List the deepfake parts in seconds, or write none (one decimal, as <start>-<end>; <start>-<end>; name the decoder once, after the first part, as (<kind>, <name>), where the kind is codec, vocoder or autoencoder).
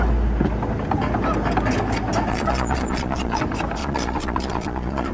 2.3-3.4 (vocoder, Vocos); 3.8-5.1